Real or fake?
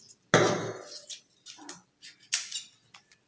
real